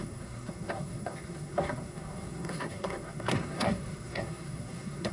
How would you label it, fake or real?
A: fake